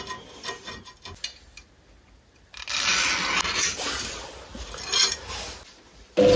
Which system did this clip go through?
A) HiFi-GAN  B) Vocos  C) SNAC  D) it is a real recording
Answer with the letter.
D